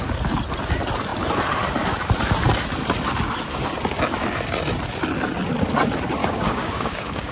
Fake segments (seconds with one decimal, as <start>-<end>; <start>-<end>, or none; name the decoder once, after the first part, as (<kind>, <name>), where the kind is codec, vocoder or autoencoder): 6.2-7.3 (codec, DAC)